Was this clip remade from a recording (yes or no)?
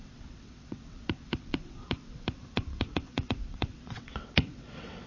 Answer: yes